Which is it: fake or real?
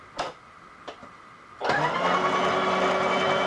real